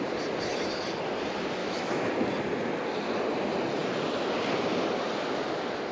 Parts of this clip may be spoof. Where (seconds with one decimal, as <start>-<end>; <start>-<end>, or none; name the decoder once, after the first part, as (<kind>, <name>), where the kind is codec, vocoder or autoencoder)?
1.6-2.1 (autoencoder, DAC-VAE)